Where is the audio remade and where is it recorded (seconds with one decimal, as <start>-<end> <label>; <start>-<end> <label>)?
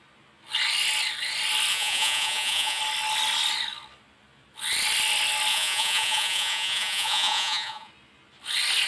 0.0-1.7 recorded; 1.7-2.8 remade; 2.8-5.5 recorded; 5.5-7.9 remade; 7.9-8.9 recorded